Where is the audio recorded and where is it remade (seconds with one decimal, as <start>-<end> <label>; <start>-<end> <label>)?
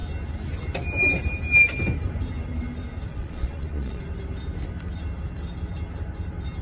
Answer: 0.0-3.1 recorded; 3.1-4.0 remade; 4.0-6.6 recorded